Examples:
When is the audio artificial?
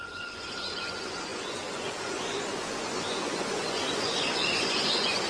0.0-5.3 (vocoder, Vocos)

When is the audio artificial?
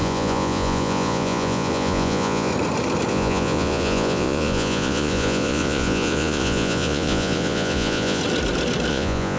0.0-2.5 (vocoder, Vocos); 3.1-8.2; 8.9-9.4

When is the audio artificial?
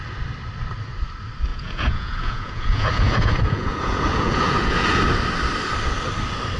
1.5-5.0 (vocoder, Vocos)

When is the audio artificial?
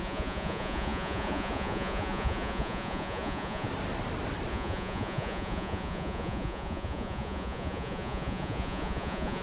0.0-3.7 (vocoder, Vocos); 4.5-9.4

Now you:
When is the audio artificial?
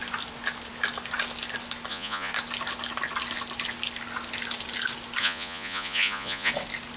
1.9-2.3 (vocoder, Vocos); 5.2-6.5